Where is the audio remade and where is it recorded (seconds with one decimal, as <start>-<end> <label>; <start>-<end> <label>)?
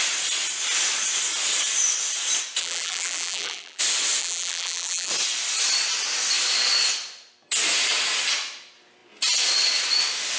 0.0-2.6 recorded; 2.6-3.8 remade; 3.8-4.2 recorded; 4.2-5.1 remade; 5.1-10.4 recorded